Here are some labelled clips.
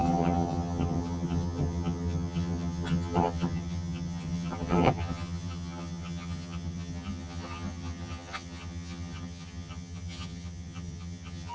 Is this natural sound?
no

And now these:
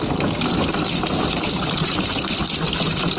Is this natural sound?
yes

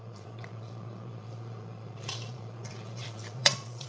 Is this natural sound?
no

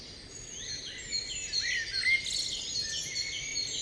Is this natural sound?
yes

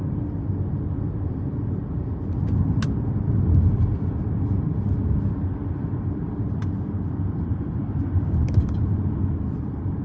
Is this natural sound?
yes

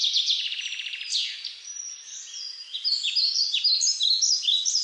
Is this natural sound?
yes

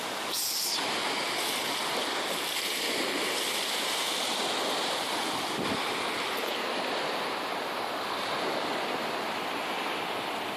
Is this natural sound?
yes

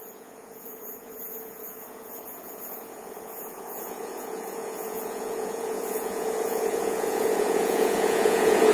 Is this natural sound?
no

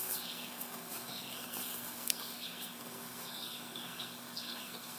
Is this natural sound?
no